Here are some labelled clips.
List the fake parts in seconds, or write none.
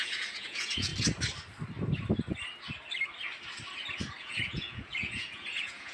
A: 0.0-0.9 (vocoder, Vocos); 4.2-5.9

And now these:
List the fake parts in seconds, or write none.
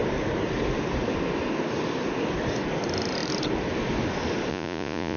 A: 4.5-5.2 (vocoder, Vocos)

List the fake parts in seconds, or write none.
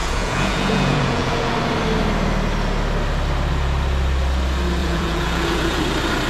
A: 0.0-1.5 (vocoder, Vocos); 4.8-5.8